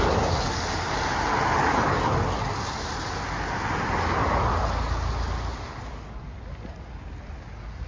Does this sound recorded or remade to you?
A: recorded